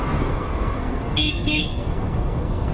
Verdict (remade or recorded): remade